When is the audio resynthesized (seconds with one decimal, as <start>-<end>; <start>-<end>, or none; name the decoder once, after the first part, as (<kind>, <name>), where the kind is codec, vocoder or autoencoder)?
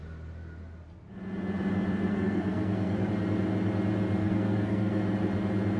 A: 2.1-3.1 (codec, SNAC); 4.2-5.0